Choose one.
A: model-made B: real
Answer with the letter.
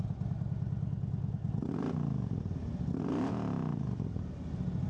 B